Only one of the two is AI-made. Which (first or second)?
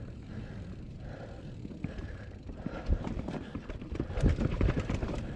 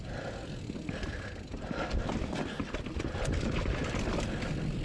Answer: first